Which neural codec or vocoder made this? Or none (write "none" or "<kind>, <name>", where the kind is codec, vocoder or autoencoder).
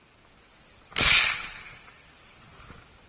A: none